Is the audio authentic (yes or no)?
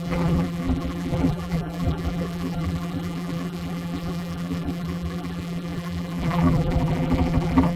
no